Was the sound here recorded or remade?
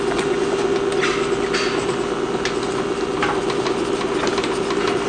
recorded